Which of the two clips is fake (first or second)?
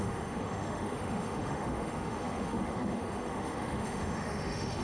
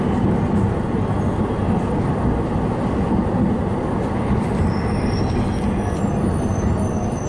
first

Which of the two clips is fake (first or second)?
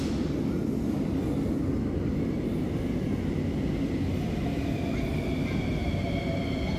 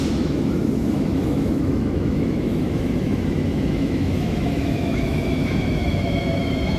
second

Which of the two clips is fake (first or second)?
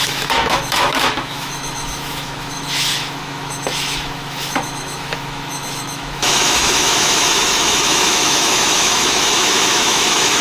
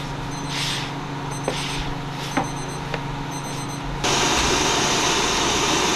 first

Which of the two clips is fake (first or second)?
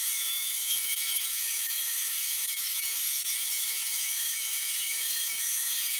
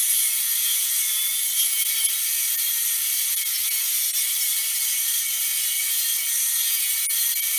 first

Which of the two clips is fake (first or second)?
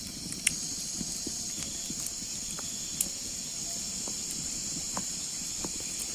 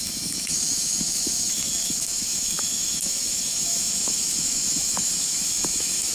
second